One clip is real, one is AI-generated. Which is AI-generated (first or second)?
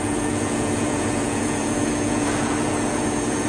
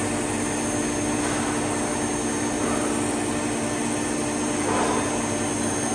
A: first